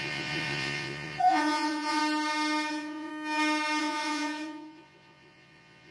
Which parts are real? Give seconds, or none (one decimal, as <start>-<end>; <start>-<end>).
2.0-2.7; 3.1-3.8